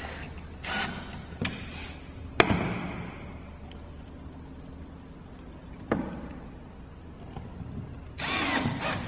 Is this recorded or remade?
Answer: recorded